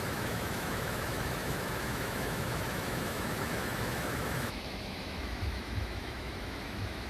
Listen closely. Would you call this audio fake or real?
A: fake